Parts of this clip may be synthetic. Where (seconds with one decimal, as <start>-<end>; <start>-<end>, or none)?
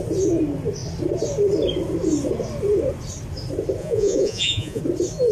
3.8-4.8